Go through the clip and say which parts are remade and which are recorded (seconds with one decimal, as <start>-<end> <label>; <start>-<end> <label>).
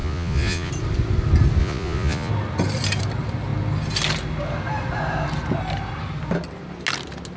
0.0-0.7 remade; 0.7-1.6 recorded; 1.6-2.3 remade; 2.3-7.4 recorded